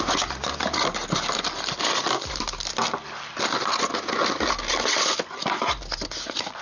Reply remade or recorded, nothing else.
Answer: recorded